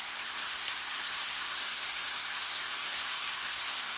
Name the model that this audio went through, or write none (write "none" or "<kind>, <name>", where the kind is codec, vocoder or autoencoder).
codec, SNAC